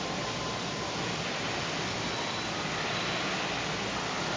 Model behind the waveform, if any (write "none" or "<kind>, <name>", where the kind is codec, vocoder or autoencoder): none